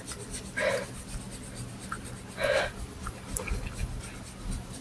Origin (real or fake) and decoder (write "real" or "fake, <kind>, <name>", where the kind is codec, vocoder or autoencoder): real